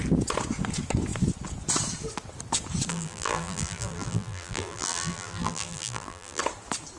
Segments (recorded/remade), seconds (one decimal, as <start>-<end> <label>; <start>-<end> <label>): 0.0-2.9 recorded; 2.9-6.4 remade; 6.4-7.0 recorded